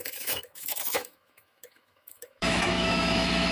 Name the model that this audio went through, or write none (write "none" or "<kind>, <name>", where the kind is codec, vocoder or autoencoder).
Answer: autoencoder, DAC-VAE